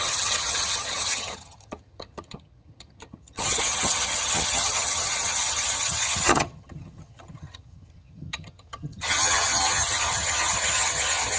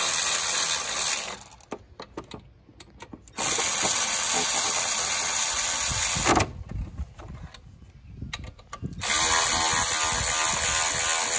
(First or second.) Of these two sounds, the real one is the second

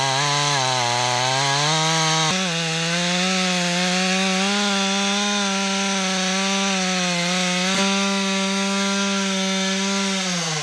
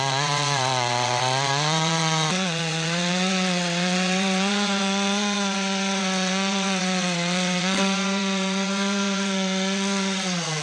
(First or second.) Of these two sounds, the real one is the first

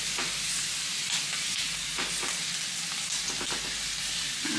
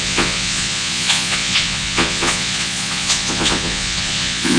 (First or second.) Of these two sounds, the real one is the first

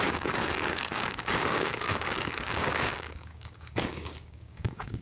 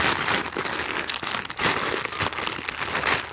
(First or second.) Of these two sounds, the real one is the second